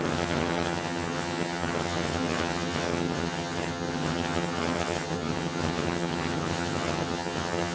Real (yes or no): no